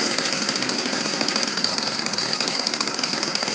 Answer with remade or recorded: remade